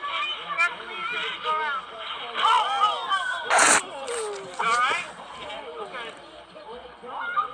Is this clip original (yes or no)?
yes